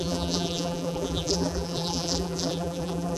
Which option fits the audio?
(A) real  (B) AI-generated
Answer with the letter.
B